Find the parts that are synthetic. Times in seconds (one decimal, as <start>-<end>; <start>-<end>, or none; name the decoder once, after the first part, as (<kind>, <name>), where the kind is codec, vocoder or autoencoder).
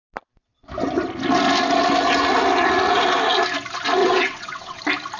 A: 4.0-4.8 (vocoder, WaveNeXt)